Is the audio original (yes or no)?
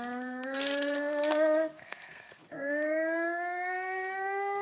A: no